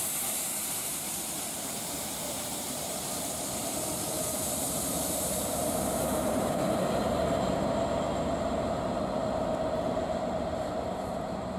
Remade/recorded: remade